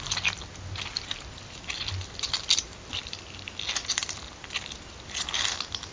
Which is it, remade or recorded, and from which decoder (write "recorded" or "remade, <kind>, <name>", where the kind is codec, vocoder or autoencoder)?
recorded